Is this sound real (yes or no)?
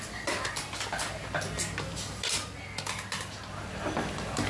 yes